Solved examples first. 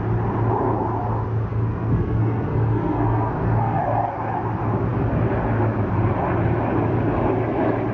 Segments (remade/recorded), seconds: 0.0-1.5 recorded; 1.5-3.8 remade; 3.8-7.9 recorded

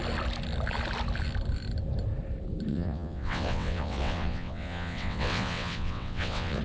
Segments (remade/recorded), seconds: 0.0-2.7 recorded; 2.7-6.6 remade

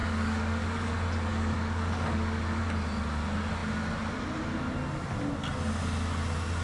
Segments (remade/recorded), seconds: 0.0-0.9 remade; 0.9-1.3 recorded; 1.3-2.4 remade; 2.4-6.6 recorded

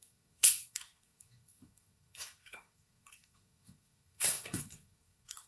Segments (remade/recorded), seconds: 0.0-5.5 remade

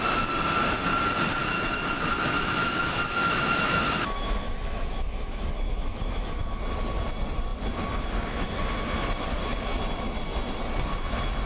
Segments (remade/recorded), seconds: 0.0-1.4 recorded; 1.4-6.6 remade; 6.6-11.5 recorded

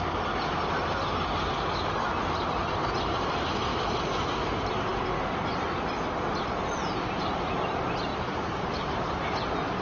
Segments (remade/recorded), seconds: 0.0-3.7 recorded; 3.7-4.4 remade; 4.4-8.1 recorded; 8.1-9.1 remade; 9.1-9.8 recorded

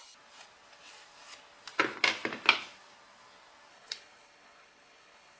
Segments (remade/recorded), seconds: 0.0-3.7 recorded; 3.7-5.4 remade